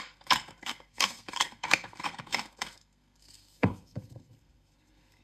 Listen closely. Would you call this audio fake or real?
fake